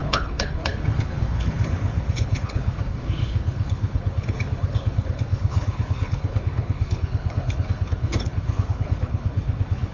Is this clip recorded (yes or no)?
no